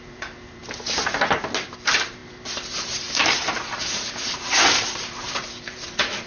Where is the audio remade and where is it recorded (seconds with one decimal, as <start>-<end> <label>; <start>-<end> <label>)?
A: 0.0-0.6 remade; 0.6-1.7 recorded; 1.7-6.3 remade